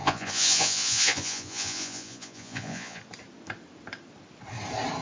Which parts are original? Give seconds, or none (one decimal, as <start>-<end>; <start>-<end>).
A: 3.0-5.0